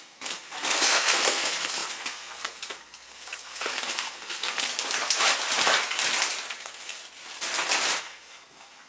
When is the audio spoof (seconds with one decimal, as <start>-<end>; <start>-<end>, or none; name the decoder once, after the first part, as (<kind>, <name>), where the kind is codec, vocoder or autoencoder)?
0.0-4.7 (codec, SNAC); 6.6-7.0; 8.0-8.9